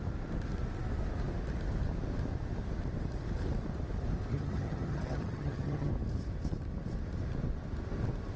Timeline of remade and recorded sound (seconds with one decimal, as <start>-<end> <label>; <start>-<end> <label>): 0.0-4.3 recorded; 4.3-5.9 remade; 5.9-8.4 recorded